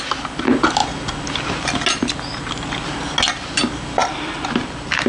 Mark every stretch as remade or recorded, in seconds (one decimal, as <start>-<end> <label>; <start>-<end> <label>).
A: 0.0-4.0 recorded; 4.0-5.1 remade